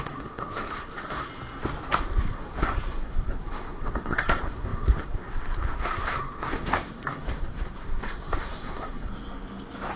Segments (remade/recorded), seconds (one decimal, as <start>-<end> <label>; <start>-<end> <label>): 0.0-1.3 remade; 1.3-2.0 recorded; 2.0-9.1 remade; 9.1-10.0 recorded